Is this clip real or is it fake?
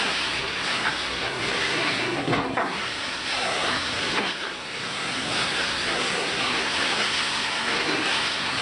fake